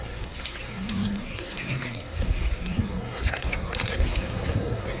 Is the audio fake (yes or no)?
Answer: yes